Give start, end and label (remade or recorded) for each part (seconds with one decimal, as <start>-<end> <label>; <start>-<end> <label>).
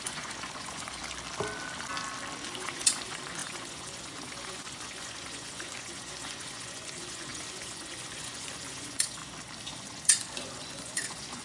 0.0-1.0 remade; 1.0-2.5 recorded; 2.5-9.2 remade; 9.2-9.8 recorded; 9.8-11.4 remade